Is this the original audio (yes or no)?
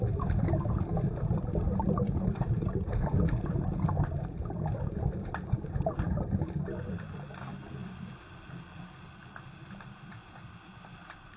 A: yes